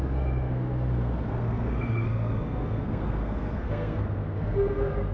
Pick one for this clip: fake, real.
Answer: fake